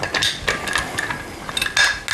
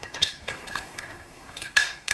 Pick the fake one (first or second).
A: second